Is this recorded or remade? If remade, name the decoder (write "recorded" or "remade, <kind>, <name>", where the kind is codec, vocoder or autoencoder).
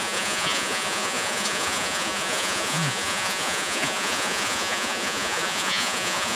remade, vocoder, Vocos